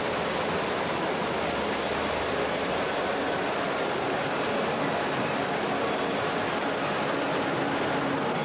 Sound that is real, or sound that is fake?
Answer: real